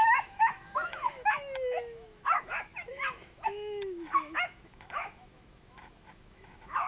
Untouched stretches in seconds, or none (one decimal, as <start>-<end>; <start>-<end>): none